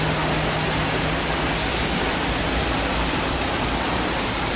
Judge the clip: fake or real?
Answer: real